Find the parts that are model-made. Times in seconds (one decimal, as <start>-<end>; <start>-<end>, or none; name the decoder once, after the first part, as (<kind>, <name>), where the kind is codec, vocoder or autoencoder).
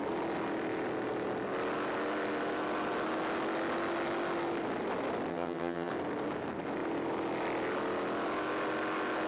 5.3-5.9 (vocoder, HiFi-GAN)